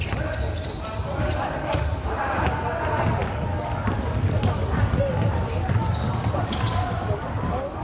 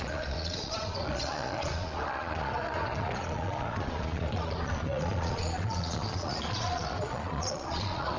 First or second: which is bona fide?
first